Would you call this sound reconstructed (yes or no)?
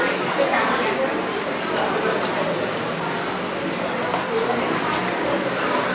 no